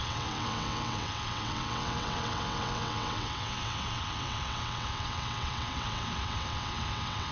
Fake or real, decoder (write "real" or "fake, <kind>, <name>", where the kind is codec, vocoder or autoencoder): fake, vocoder, WaveNeXt